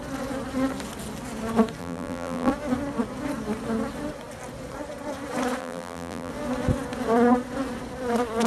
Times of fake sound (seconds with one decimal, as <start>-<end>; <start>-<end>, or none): 1.8-2.5; 5.6-6.3